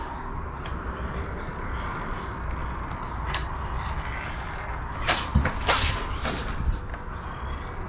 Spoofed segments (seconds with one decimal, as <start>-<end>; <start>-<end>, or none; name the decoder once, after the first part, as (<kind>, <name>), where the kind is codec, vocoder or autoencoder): none